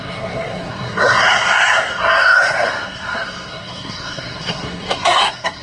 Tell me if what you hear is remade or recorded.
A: remade